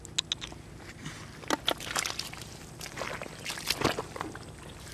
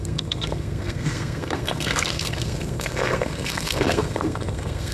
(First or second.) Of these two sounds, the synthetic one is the second